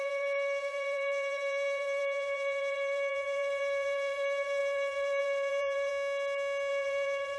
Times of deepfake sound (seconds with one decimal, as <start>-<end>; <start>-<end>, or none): 0.0-5.9; 6.7-7.4